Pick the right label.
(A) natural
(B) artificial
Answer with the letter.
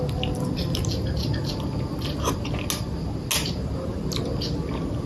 A